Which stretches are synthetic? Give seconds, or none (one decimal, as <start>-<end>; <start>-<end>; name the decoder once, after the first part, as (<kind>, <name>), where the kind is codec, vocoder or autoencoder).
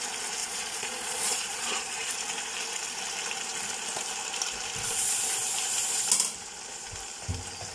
0.4-2.1 (vocoder, Vocos)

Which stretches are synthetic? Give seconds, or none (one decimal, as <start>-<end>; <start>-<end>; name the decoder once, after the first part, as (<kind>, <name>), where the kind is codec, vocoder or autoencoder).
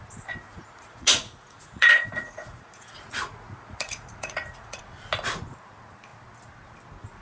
0.5-4.8 (vocoder, Vocos)